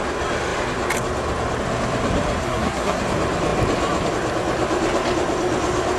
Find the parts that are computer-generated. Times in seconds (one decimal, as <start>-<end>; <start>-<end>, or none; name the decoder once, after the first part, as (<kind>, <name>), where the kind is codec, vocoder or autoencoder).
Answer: 2.4-3.0 (codec, SNAC)